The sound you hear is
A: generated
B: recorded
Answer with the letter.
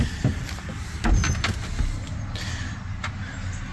B